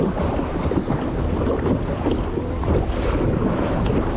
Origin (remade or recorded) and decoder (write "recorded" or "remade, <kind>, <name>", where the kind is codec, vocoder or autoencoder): recorded